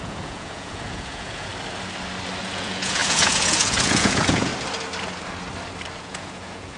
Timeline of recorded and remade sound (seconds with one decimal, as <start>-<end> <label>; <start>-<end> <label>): 0.0-1.5 remade; 1.5-2.4 recorded; 2.4-4.5 remade; 4.5-6.0 recorded; 6.0-6.8 remade